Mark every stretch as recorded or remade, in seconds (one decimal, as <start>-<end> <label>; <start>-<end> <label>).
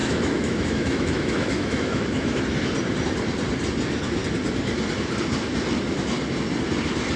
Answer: 0.0-2.4 remade; 2.4-7.2 recorded